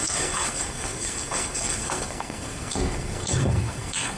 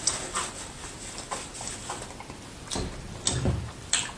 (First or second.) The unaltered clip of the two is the second